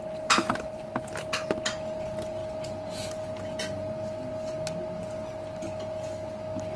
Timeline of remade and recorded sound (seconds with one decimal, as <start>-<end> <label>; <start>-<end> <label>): 0.0-6.8 recorded